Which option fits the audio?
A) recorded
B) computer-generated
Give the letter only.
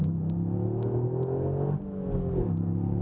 A